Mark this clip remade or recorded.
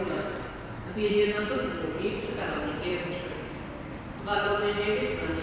remade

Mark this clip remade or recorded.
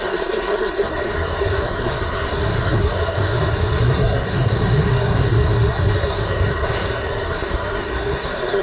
remade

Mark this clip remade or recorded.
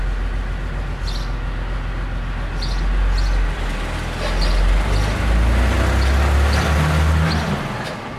recorded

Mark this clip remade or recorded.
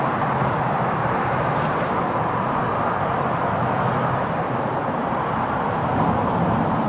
remade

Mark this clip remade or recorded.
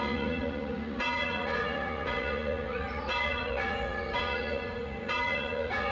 remade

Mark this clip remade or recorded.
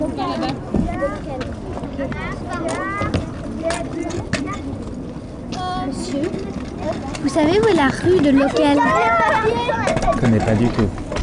recorded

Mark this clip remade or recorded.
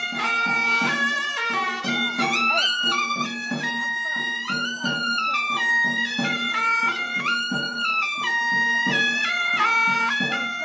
remade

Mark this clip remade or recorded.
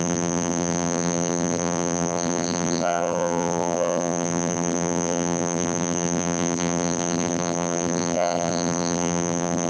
remade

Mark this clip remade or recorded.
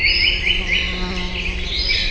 recorded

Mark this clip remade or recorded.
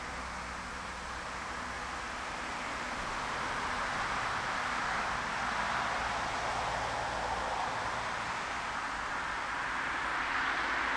recorded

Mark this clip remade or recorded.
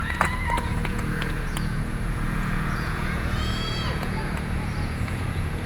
remade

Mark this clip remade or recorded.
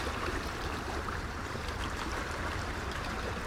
remade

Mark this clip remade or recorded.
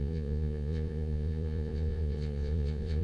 remade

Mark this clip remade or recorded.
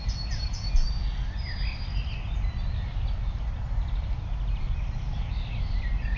recorded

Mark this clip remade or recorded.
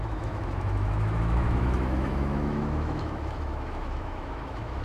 remade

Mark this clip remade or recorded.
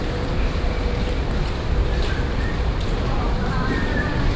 remade